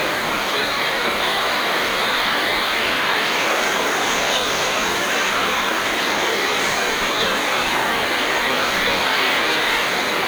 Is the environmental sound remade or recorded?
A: remade